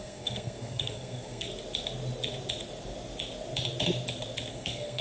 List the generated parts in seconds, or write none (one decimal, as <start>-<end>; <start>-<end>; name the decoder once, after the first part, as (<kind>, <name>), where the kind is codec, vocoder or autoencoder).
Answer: 0.0-1.5 (codec, SNAC); 4.5-5.0